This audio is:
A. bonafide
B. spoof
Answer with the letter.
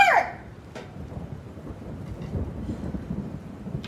B